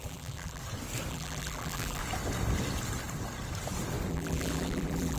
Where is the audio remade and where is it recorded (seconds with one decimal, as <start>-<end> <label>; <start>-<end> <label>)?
0.0-0.6 remade; 0.6-1.1 recorded; 1.1-2.0 remade; 2.0-4.1 recorded; 4.1-5.2 remade